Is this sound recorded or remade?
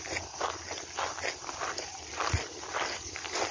recorded